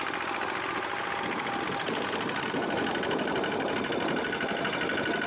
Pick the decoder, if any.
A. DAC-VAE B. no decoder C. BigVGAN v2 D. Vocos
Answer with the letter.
B